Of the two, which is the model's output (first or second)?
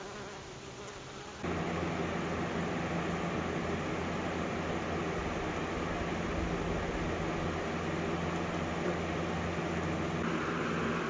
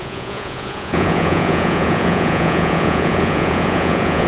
second